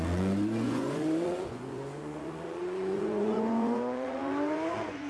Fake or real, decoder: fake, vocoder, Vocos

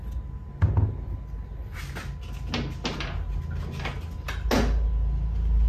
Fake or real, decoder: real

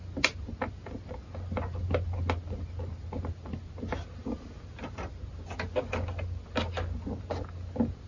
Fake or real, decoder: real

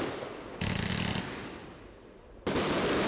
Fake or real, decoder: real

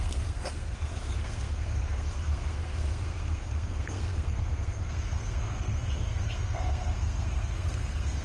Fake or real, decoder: fake, codec, SNAC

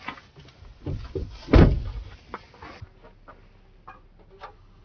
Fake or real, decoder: real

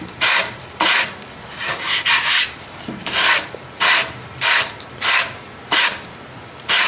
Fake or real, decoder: fake, vocoder, BigVGAN v2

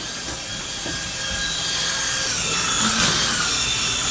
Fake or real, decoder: real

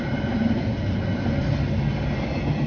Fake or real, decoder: real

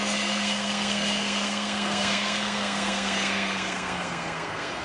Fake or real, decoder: fake, codec, SNAC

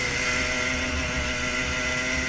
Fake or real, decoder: real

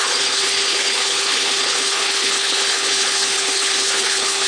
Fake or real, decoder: fake, codec, HILCodec